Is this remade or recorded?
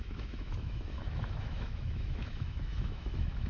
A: remade